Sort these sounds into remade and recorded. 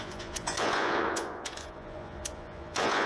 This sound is remade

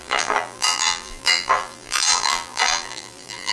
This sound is remade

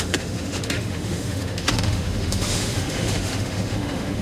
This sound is remade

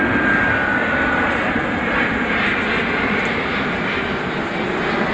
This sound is recorded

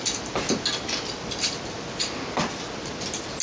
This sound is recorded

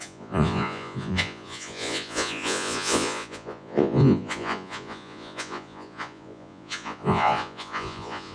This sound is remade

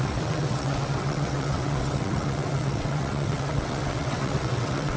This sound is remade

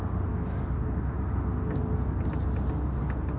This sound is recorded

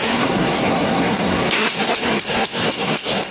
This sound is remade